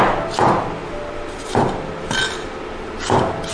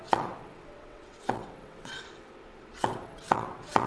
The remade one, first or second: second